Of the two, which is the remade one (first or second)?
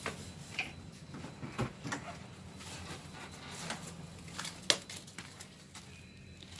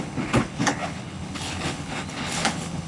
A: second